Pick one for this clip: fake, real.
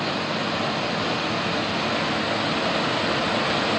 real